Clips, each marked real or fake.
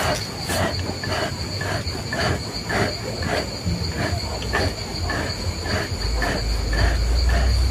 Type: real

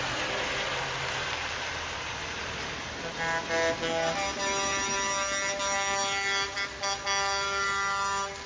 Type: real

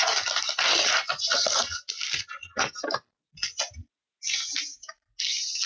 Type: real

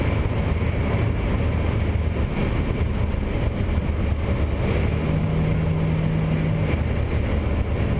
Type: real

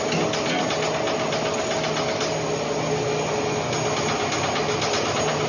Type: real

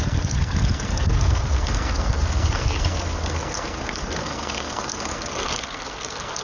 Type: fake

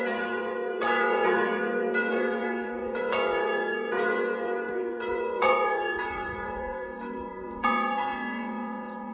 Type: fake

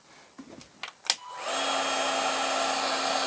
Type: real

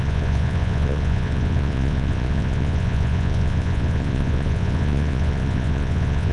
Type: fake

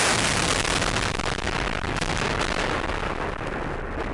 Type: real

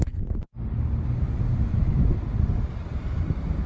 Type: real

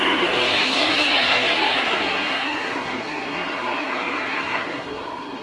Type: fake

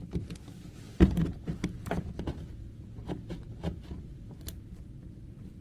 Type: real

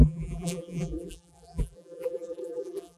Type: fake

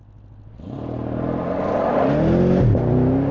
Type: real